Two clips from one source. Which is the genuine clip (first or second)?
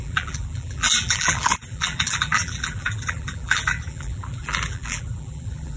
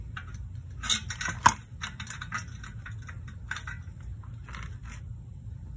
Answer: second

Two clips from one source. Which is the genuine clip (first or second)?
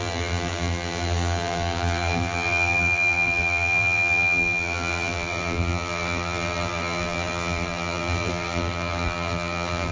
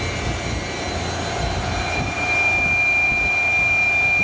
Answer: second